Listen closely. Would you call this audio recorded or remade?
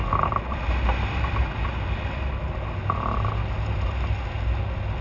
recorded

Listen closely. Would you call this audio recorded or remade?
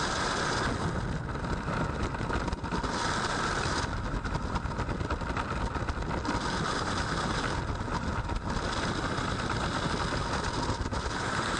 recorded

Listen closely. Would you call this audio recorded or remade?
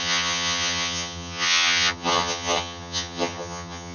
remade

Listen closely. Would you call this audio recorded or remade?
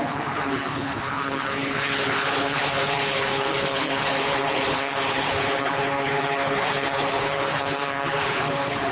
remade